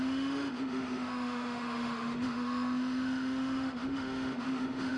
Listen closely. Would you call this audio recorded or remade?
remade